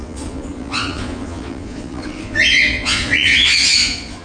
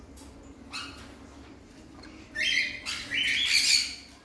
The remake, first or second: first